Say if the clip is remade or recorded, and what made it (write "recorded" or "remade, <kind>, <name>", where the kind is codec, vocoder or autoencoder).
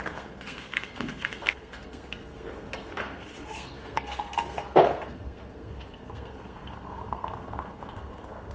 remade, codec, SNAC